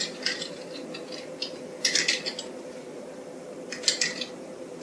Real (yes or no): no